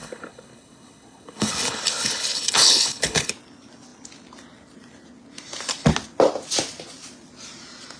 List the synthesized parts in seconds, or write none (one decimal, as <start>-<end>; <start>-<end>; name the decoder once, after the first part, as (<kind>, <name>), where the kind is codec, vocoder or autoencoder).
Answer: 0.0-3.3 (codec, HILCodec)